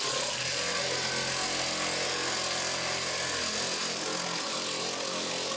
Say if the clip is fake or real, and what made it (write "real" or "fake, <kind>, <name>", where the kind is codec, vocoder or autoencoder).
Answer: real